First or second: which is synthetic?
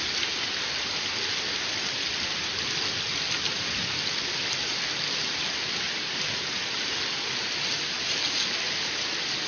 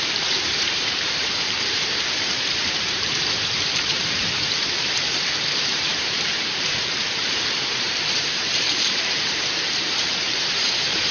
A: second